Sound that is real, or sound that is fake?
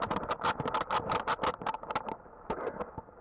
real